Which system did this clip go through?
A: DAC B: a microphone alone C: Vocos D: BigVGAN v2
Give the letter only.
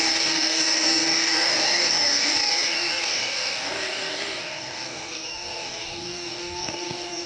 A